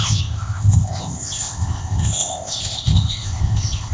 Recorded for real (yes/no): no